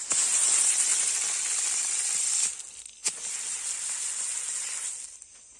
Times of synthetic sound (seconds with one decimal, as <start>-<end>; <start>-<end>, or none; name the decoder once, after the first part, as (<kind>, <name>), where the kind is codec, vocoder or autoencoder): none